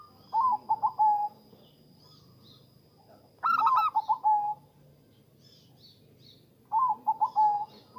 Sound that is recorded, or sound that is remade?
recorded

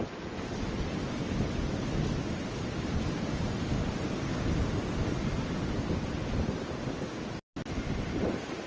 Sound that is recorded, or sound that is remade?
recorded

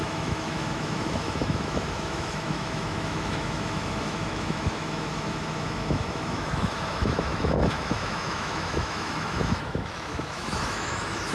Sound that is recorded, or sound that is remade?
remade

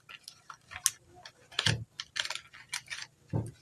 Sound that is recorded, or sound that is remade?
recorded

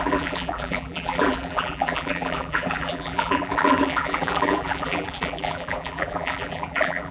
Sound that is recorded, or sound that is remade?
remade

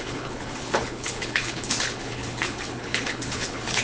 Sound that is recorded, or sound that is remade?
remade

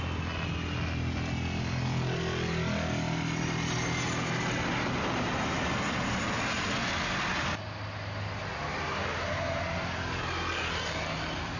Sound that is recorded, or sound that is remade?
recorded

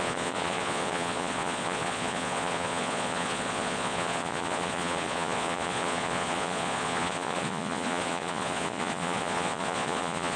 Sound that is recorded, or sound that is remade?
remade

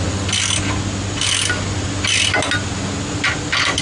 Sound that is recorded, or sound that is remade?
recorded